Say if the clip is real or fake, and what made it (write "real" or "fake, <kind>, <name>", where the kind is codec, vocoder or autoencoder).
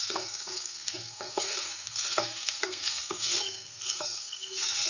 fake, codec, SNAC